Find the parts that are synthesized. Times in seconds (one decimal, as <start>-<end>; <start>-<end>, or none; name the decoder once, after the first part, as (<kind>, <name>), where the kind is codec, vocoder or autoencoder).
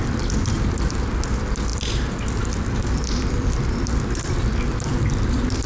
none